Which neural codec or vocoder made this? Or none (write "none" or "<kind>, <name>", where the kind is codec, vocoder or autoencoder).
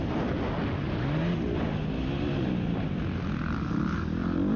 none